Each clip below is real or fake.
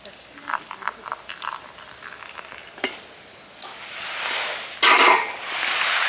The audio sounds real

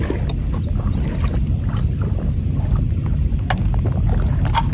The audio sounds real